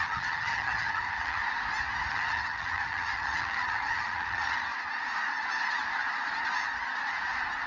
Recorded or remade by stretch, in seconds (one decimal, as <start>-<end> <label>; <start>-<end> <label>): 0.0-1.4 remade; 1.4-2.1 recorded; 2.1-4.7 remade; 4.7-7.7 recorded